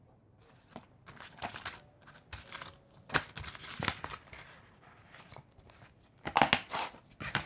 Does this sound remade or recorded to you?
recorded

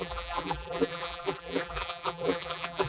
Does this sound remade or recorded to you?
remade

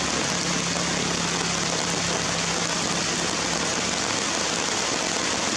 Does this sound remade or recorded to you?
recorded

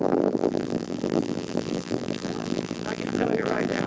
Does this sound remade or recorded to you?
remade